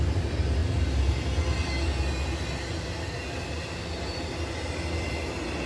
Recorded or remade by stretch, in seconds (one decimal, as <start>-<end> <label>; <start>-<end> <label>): 0.0-5.7 recorded